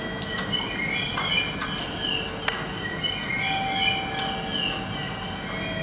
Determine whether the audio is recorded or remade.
recorded